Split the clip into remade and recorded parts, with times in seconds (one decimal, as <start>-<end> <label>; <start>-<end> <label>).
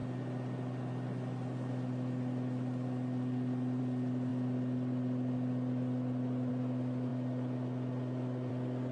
0.0-8.9 recorded